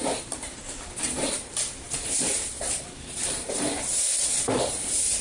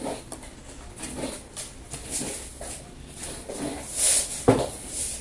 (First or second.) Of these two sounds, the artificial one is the first